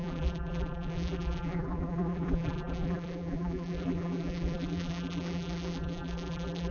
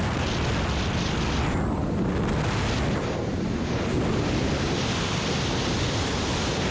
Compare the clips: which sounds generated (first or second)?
first